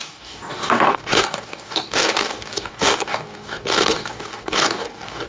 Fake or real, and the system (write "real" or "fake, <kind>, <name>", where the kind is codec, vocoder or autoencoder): fake, codec, DAC